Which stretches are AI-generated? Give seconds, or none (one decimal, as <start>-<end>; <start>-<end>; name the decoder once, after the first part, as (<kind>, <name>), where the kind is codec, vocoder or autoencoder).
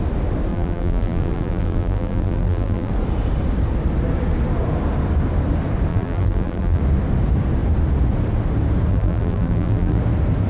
0.5-2.9 (vocoder, BigVGAN v2); 5.9-6.8; 8.9-10.0